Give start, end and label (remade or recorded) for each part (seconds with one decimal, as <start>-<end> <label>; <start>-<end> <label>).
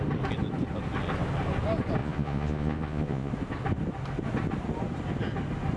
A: 0.0-2.0 recorded; 2.0-3.3 remade; 3.3-5.8 recorded